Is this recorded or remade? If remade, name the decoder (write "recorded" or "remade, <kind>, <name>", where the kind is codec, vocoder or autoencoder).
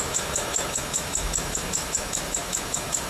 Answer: remade, autoencoder, DAC-VAE